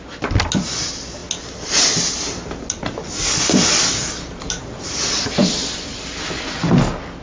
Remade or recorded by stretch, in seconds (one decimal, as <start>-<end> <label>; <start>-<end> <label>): 0.0-7.2 recorded